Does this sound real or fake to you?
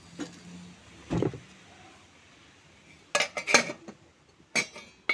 real